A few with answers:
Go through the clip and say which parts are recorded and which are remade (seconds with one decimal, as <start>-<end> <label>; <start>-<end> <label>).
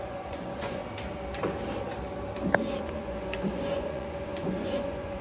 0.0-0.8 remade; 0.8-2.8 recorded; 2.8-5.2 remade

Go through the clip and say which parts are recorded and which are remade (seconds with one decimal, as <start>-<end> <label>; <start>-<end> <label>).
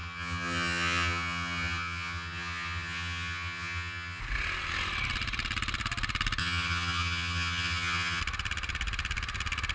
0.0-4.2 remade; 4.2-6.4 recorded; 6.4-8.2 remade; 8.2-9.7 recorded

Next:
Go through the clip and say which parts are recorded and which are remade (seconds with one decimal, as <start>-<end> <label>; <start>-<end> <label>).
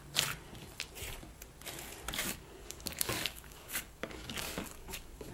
0.0-2.2 recorded; 2.2-5.3 remade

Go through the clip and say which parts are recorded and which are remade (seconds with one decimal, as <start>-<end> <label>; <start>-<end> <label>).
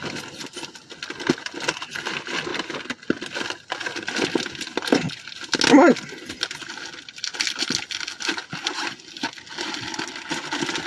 0.0-10.9 recorded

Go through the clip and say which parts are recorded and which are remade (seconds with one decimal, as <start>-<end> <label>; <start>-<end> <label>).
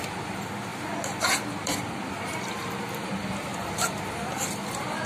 0.0-0.7 remade; 0.7-2.1 recorded; 2.1-5.1 remade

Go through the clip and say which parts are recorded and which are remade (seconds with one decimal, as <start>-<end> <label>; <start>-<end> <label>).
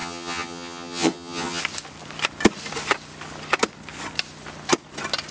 0.0-1.6 remade; 1.6-5.3 recorded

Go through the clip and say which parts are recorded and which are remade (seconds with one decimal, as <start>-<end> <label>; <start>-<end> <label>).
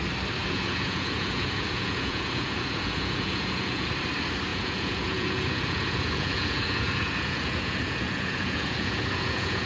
0.0-0.4 recorded; 0.4-3.9 remade; 3.9-4.5 recorded; 4.5-9.7 remade